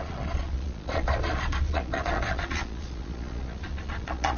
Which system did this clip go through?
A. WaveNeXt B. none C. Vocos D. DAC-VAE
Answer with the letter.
C